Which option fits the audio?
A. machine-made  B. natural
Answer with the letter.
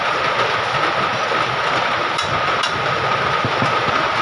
B